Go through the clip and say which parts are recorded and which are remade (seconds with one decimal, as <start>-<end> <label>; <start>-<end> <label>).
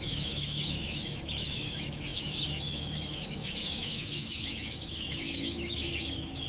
0.0-6.5 remade